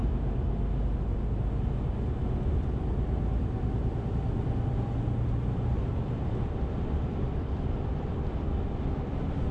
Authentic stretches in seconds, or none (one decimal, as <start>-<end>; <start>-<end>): 0.0-9.5